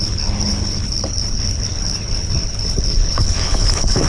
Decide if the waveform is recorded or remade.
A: remade